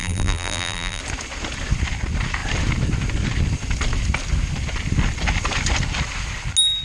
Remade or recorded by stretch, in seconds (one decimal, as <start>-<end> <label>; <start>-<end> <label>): 0.0-1.0 remade; 1.0-6.8 recorded